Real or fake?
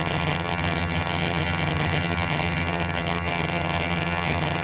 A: fake